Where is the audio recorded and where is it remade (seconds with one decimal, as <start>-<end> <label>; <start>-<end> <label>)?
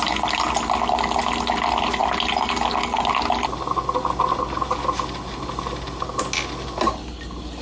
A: 0.0-7.6 recorded